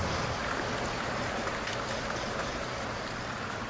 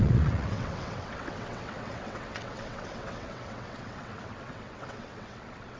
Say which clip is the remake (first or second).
second